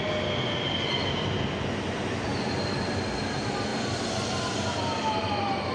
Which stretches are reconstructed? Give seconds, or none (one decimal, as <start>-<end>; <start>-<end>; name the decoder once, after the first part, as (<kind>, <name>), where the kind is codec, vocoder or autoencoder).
none